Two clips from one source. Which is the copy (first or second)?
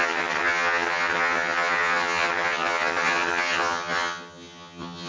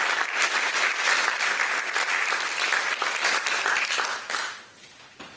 first